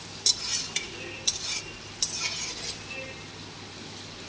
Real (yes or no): yes